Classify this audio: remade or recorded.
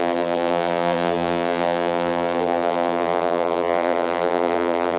remade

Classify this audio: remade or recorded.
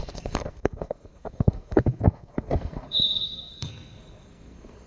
remade